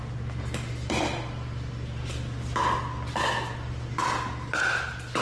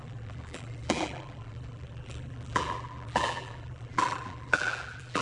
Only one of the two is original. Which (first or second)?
first